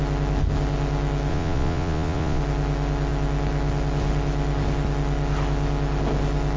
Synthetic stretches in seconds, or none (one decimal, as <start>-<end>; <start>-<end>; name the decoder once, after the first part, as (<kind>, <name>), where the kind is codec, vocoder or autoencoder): 1.3-2.4 (vocoder, Vocos)